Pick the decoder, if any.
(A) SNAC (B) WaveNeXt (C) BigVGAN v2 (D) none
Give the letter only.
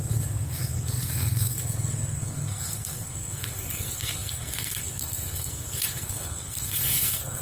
A